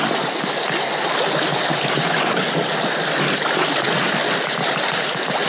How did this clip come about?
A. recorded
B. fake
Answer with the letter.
A